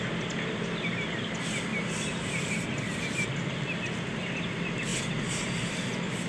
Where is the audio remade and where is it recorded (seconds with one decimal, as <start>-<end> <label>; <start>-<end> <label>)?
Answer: 0.0-1.7 recorded; 1.7-3.0 remade; 3.0-6.3 recorded